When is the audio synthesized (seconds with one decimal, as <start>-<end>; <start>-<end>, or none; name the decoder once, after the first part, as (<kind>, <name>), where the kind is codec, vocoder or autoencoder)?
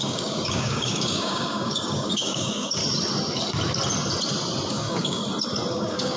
0.0-2.8 (codec, DAC); 4.7-5.2; 5.7-6.2